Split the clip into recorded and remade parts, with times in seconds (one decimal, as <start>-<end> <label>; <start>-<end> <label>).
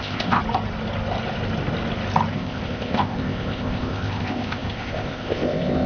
0.0-0.4 remade; 0.4-2.3 recorded; 2.3-5.9 remade